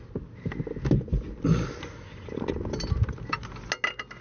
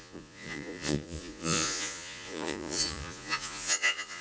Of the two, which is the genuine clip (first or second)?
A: first